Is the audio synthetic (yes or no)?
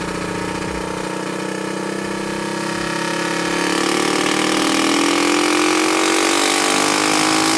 no